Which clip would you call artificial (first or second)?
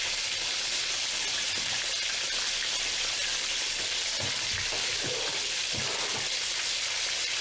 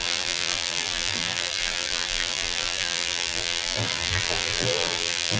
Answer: second